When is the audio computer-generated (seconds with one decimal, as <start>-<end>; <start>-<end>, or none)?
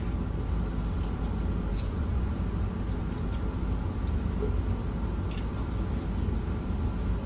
1.7-2.3